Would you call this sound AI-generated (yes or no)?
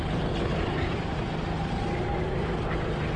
no